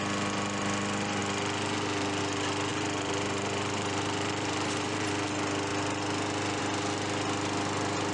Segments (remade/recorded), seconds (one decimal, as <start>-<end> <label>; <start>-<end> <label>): 0.0-2.7 recorded; 2.7-5.1 remade; 5.1-8.1 recorded